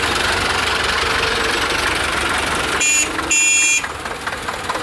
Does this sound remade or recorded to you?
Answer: recorded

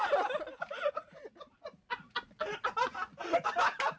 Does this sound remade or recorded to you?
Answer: recorded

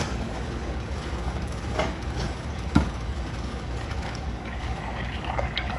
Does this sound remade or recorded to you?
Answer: remade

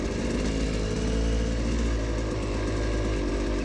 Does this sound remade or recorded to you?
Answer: recorded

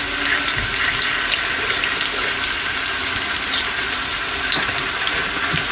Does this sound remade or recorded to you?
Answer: recorded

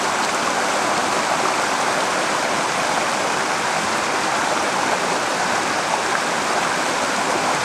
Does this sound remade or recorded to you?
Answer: remade